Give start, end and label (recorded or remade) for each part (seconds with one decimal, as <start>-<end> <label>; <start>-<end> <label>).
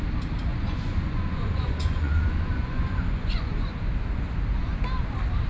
0.0-0.5 recorded; 0.5-3.8 remade; 3.8-5.5 recorded